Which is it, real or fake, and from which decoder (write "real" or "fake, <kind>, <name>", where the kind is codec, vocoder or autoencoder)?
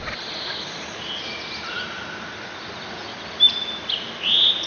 real